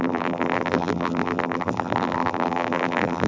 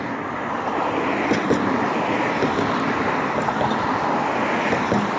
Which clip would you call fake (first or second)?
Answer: first